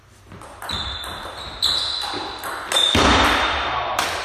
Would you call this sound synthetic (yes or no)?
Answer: no